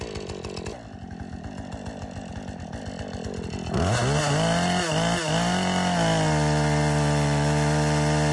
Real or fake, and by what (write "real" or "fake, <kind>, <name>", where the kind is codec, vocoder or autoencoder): real